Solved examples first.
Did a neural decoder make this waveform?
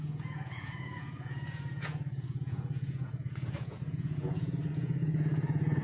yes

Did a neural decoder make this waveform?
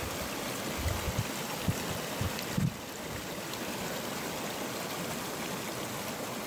no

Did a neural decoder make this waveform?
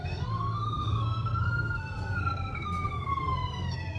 yes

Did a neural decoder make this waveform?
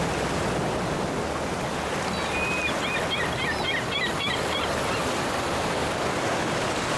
no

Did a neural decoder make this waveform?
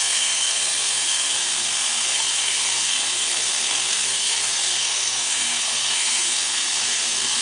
yes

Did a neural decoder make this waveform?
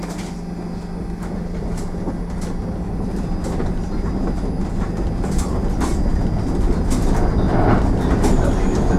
no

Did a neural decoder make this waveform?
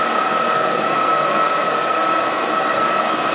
yes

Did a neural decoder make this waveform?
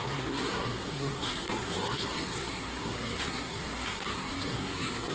yes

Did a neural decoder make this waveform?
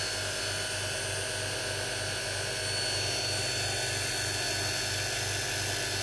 no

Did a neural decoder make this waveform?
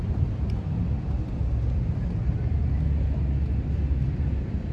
no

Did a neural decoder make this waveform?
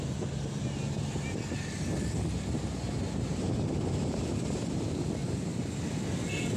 no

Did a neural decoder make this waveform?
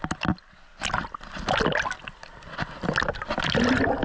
no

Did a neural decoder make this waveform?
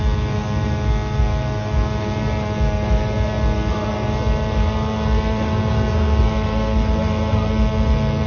no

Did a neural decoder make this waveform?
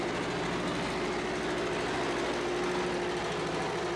no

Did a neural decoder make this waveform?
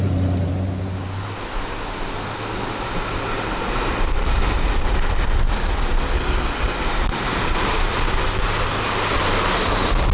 no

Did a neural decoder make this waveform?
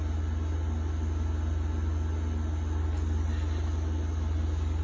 no